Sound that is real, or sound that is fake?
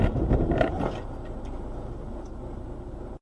real